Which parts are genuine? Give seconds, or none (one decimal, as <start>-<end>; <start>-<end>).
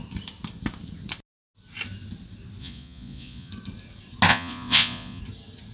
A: 0.0-2.6; 3.5-4.3; 5.2-5.7